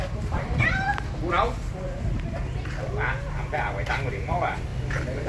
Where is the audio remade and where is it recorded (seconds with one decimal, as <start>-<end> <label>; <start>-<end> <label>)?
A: 0.0-0.9 remade; 0.9-4.1 recorded; 4.1-4.7 remade; 4.7-5.3 recorded